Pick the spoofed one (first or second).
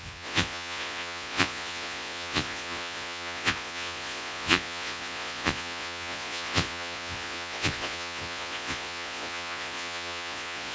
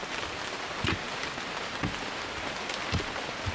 first